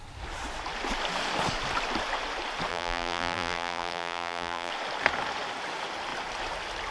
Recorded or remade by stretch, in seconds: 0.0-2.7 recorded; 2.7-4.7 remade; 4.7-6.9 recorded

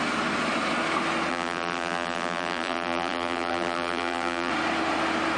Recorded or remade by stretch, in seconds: 0.0-1.3 recorded; 1.3-4.5 remade; 4.5-5.4 recorded

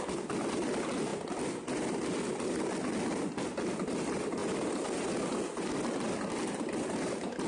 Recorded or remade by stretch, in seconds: 0.0-7.5 recorded

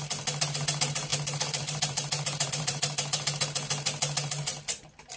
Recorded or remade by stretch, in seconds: 0.0-5.2 remade

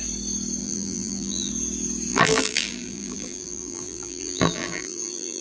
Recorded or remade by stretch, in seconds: 0.0-0.6 recorded; 0.6-1.5 remade; 1.5-2.1 recorded; 2.1-5.4 remade

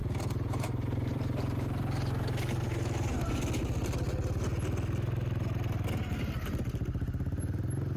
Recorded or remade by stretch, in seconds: 0.0-3.4 remade; 3.4-8.0 recorded